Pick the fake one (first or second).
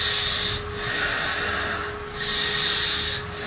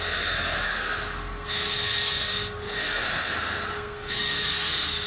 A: second